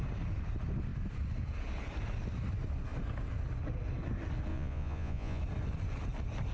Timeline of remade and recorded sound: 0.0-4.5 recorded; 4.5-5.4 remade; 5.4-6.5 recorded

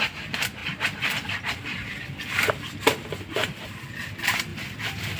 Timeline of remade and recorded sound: 0.0-3.4 recorded; 3.4-3.9 remade; 3.9-4.5 recorded; 4.5-5.2 remade

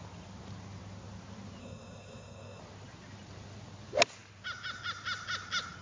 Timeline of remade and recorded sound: 0.0-1.6 recorded; 1.6-2.6 remade; 2.6-5.8 recorded